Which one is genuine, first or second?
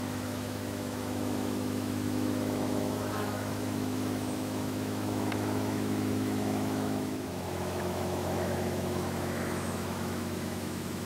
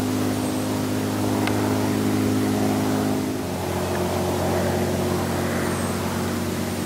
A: second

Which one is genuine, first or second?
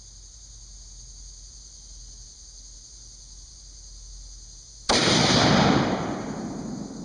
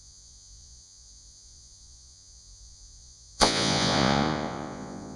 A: first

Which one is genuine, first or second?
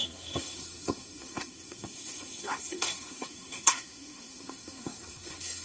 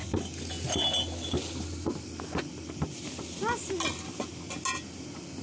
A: second